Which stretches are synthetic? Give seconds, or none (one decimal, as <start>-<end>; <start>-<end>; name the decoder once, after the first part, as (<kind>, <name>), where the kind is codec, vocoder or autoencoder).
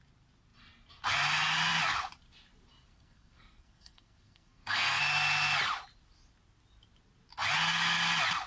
2.9-5.0 (codec, SNAC)